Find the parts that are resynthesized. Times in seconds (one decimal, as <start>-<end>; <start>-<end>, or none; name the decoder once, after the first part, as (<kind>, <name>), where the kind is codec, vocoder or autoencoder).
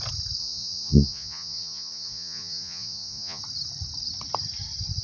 0.4-3.4 (vocoder, Vocos)